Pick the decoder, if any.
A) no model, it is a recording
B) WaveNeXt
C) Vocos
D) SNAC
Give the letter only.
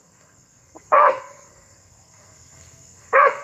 D